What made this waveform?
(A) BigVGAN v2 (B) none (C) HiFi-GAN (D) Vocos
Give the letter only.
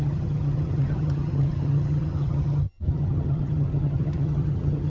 C